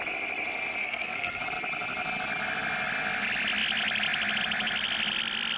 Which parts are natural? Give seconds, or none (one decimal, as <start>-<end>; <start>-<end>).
0.0-0.8; 1.4-5.6